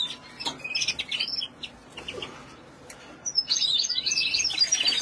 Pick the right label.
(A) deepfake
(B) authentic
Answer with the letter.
B